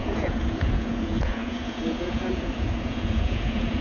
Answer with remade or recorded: remade